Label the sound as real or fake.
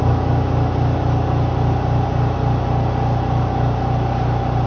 real